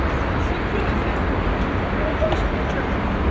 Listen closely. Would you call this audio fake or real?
real